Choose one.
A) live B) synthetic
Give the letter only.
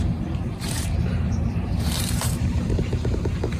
B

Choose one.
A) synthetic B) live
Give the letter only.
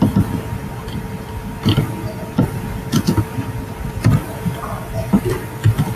B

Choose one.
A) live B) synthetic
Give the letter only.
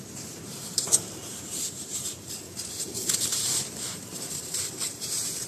B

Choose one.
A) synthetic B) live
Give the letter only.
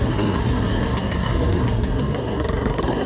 A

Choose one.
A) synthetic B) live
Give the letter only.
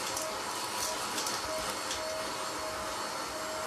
B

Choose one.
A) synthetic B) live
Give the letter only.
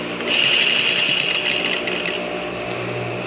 B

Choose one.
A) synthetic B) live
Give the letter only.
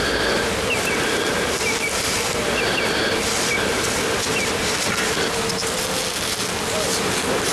B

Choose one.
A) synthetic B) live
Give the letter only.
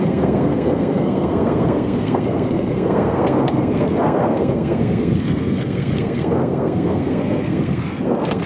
A